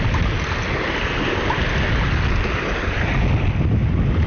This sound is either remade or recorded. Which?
recorded